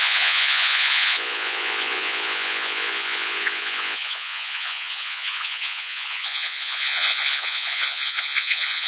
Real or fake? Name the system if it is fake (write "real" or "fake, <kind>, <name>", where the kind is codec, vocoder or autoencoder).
fake, vocoder, Vocos